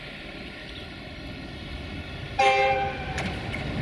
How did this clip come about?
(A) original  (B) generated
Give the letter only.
A